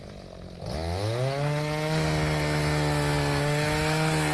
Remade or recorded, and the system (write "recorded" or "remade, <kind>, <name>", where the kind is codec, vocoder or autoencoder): recorded